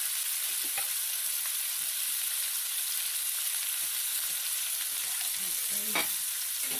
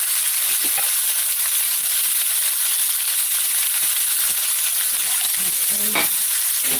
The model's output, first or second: first